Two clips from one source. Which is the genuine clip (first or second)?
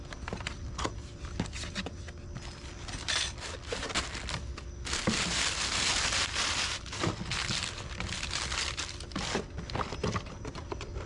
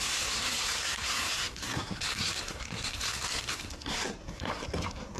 first